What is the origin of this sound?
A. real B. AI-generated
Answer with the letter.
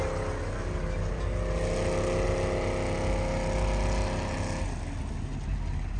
A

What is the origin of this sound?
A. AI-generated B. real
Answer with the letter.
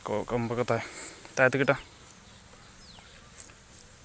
B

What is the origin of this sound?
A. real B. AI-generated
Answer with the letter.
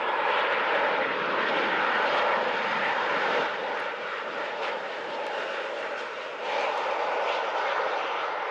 B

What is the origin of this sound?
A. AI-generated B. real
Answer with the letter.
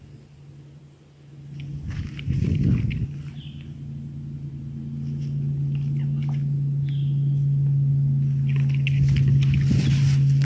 B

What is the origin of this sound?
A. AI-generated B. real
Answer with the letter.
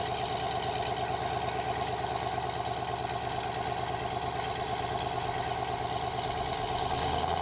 B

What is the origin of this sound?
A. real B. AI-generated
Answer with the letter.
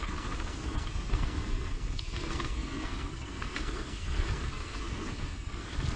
B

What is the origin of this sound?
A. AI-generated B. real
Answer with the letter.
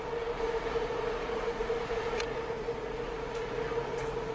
A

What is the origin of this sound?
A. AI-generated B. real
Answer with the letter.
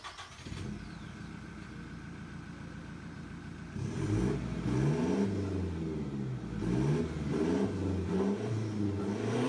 B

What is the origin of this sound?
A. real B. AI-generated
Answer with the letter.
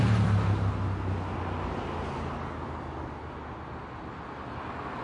A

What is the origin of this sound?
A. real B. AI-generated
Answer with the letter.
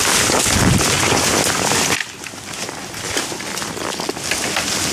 A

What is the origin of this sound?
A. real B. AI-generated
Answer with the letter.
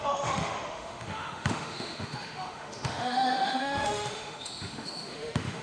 B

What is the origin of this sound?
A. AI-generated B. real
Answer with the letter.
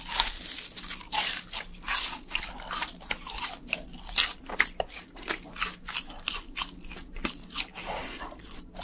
B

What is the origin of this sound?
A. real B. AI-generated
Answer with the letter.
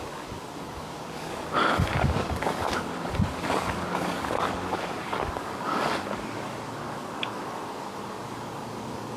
B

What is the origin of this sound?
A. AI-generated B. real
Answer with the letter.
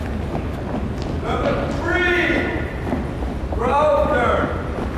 B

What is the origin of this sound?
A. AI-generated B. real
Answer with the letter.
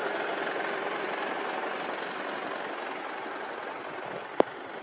B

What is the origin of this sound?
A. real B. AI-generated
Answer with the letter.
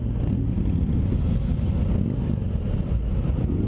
A